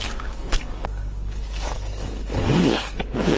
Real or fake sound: fake